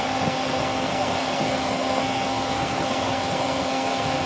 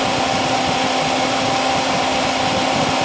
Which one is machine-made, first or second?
first